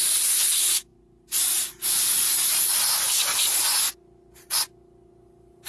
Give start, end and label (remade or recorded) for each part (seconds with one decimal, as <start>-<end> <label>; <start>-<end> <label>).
0.0-5.7 recorded

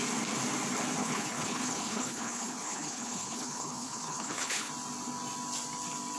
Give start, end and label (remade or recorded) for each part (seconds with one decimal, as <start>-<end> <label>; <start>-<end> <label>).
0.0-1.0 recorded; 1.0-4.7 remade; 4.7-6.2 recorded

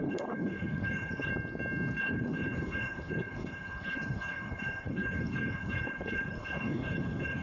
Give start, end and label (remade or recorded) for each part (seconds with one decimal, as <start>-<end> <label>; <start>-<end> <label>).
0.0-1.3 remade; 1.3-2.0 recorded; 2.0-7.4 remade

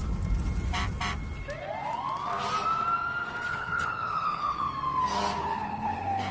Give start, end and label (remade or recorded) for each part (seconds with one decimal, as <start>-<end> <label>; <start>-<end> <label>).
0.0-3.5 recorded; 3.5-4.7 remade; 4.7-5.4 recorded; 5.4-6.3 remade